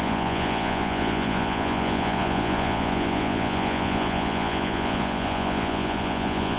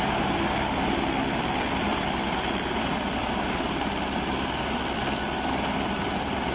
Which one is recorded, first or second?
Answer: second